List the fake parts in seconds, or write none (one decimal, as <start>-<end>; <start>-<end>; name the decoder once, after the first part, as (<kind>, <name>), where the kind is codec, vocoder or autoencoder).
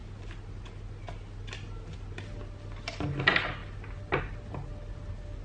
none